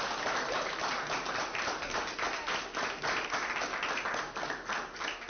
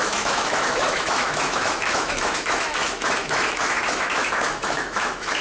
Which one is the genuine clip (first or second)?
first